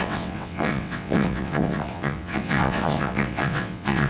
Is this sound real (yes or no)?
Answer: no